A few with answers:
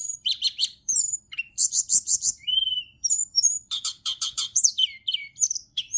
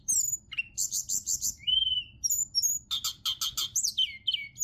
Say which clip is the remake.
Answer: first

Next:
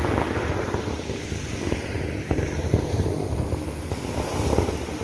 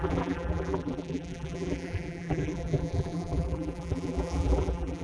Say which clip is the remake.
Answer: second